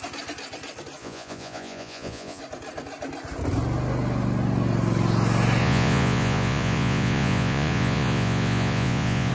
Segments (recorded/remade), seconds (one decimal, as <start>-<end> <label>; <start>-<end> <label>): 0.0-1.0 recorded; 1.0-2.4 remade; 2.4-5.6 recorded; 5.6-9.3 remade